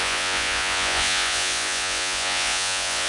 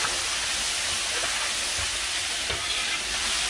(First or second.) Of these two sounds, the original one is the second